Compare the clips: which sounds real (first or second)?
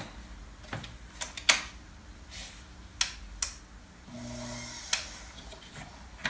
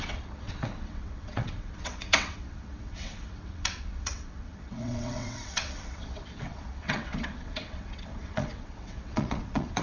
first